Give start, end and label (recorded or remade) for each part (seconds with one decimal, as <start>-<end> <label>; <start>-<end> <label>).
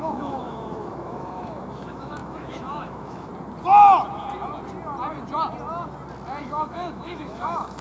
0.0-3.3 remade; 3.3-6.4 recorded; 6.4-7.8 remade